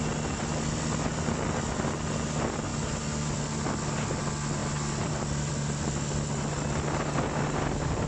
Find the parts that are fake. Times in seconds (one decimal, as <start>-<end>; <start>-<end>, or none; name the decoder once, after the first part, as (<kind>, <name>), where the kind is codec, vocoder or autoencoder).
4.6-5.5 (vocoder, BigVGAN v2)